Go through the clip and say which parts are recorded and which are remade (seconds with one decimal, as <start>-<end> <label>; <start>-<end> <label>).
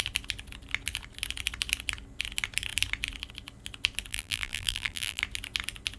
0.0-4.1 recorded; 4.1-5.2 remade; 5.2-6.0 recorded